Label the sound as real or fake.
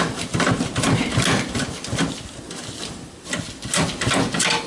real